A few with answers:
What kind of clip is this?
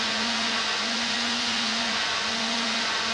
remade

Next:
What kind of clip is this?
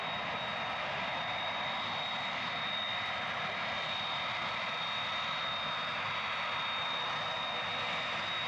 recorded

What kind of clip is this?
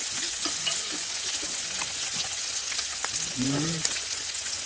remade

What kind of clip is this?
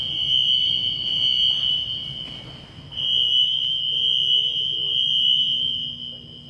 recorded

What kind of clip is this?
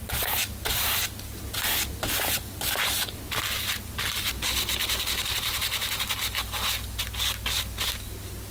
recorded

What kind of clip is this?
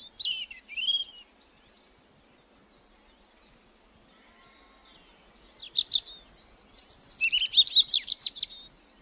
recorded